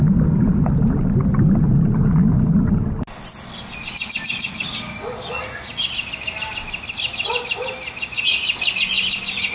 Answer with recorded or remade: recorded